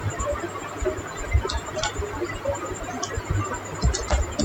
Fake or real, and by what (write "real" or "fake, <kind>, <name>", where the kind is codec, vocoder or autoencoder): real